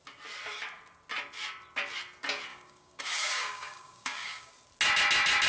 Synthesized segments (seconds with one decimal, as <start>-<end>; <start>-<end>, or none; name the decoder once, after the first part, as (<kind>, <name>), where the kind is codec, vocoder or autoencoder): 2.5-4.5 (codec, DAC)